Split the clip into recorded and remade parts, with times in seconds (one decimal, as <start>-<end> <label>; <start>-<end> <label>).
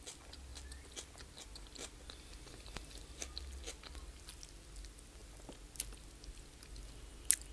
0.0-7.5 recorded